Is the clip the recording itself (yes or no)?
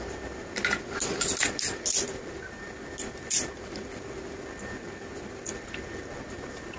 yes